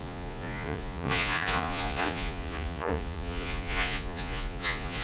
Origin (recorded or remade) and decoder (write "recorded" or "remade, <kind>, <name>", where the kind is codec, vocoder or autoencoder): remade, vocoder, Vocos